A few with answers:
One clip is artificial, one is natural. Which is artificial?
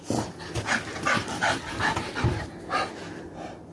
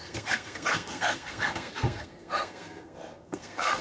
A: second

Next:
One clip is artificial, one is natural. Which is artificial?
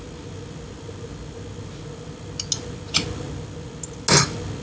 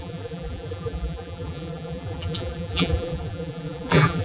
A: second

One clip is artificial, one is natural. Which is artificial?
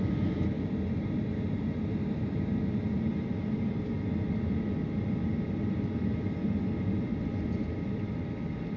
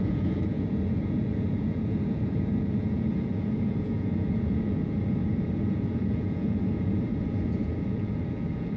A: second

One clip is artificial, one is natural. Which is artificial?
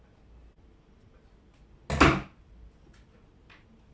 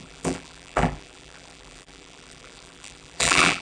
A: second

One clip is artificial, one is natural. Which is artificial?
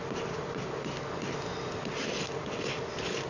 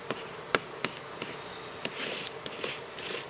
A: second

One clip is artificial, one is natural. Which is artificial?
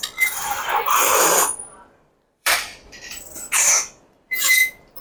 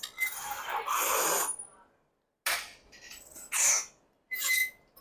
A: first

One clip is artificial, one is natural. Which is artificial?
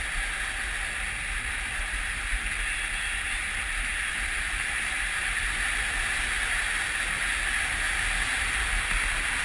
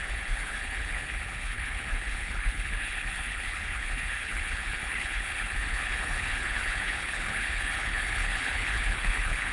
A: second